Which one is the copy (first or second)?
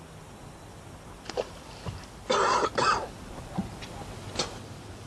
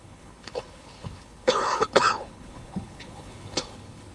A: second